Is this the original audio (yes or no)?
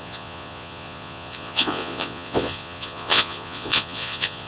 no